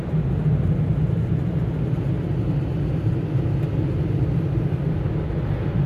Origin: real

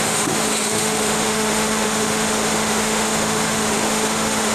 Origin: fake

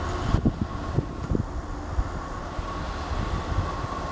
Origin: real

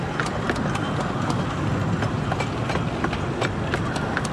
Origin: real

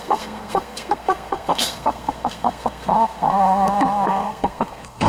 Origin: fake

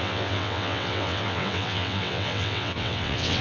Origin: fake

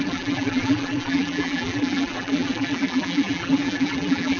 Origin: fake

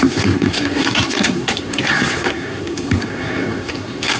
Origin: fake